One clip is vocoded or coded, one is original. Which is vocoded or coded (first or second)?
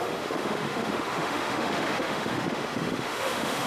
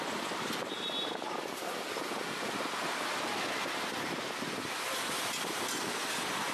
first